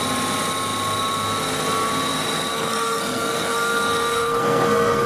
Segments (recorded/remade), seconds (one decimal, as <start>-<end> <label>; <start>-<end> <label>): 0.0-2.5 recorded; 2.5-5.1 remade